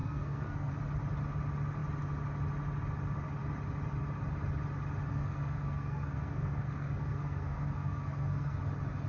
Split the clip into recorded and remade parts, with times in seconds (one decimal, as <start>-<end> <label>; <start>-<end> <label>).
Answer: 0.0-0.7 remade; 0.7-5.1 recorded; 5.1-8.6 remade; 8.6-9.1 recorded